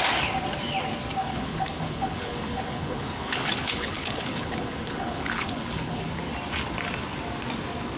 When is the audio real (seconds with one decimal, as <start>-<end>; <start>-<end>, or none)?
0.0-1.2; 6.0-8.0

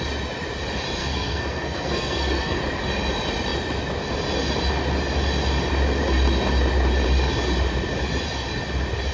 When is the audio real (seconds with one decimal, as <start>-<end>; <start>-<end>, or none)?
0.0-1.0; 2.6-9.1

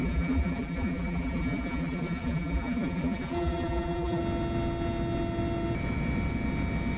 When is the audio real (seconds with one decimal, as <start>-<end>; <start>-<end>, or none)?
4.2-7.0